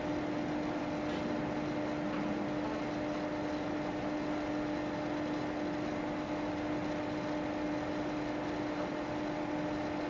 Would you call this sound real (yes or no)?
yes